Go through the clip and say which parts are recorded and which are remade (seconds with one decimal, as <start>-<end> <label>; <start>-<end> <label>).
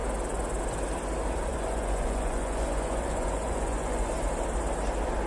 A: 0.0-1.5 recorded; 1.5-4.1 remade; 4.1-5.3 recorded